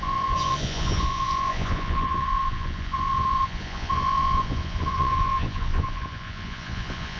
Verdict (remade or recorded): remade